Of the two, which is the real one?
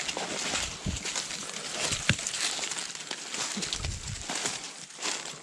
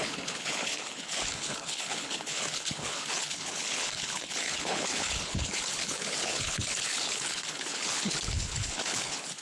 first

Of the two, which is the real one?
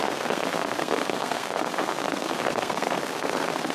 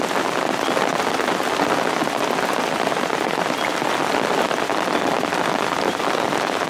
second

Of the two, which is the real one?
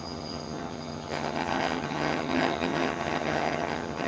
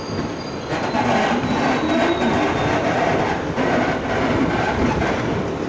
second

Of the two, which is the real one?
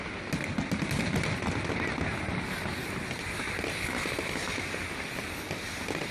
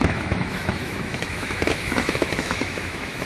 first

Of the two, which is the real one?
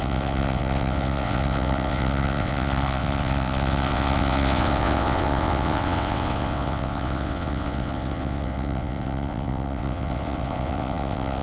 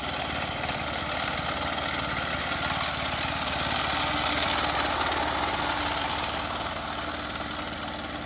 second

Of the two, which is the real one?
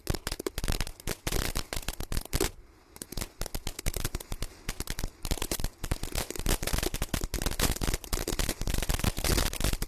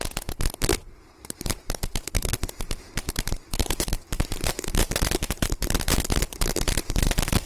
first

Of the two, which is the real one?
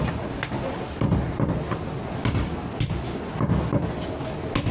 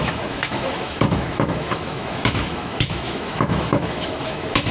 first